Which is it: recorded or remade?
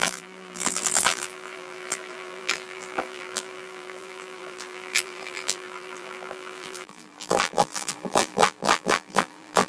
remade